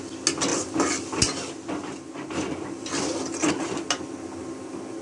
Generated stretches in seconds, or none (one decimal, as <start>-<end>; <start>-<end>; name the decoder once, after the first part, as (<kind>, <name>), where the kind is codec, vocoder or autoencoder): none